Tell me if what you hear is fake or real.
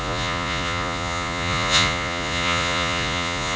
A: fake